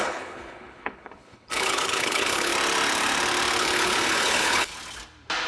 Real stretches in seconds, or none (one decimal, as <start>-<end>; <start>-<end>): 2.5-3.6; 4.7-5.5

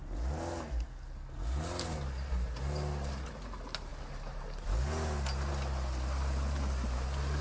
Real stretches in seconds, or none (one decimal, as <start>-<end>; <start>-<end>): 0.0-7.4

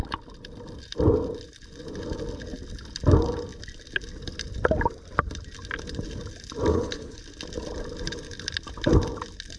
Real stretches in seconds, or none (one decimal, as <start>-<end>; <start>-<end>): 0.0-6.7; 7.2-9.6

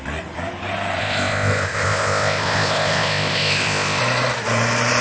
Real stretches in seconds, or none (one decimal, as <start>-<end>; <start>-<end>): 0.0-1.0; 4.0-5.0

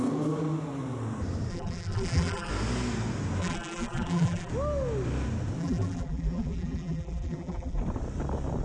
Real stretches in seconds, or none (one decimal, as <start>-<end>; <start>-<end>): 0.0-1.5; 2.5-3.4; 4.5-5.6; 7.8-8.6

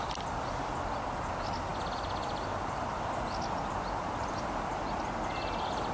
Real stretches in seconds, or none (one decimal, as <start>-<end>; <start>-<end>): 0.0-1.7; 2.9-5.9